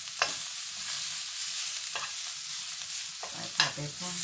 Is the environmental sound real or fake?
real